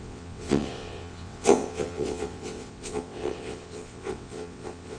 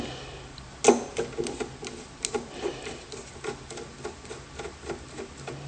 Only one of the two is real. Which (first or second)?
second